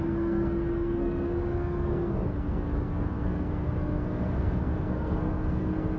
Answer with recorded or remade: remade